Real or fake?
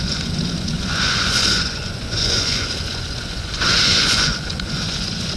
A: fake